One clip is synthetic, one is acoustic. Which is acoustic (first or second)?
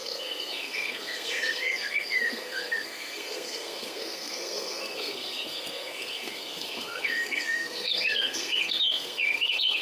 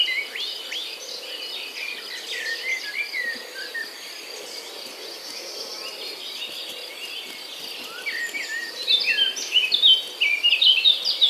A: second